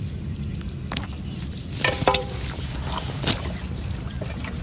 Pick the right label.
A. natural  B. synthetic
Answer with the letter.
B